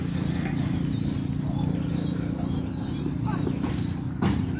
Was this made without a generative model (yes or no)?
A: yes